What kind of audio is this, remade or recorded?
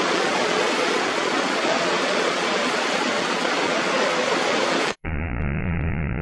remade